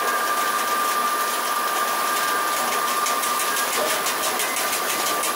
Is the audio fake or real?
real